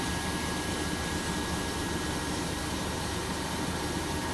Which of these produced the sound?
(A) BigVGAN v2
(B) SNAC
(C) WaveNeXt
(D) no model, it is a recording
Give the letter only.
D